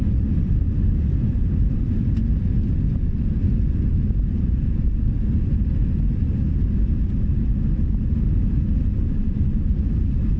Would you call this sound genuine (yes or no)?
yes